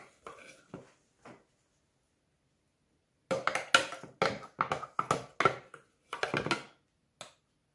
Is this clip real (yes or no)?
yes